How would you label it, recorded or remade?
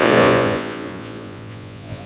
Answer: remade